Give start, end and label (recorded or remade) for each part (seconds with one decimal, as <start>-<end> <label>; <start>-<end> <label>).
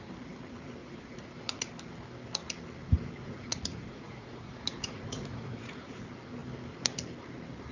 0.0-0.8 recorded; 0.8-1.7 remade; 1.7-3.2 recorded; 3.2-6.0 remade; 6.0-7.7 recorded